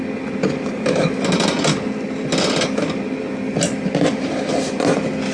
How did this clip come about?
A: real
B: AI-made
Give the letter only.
A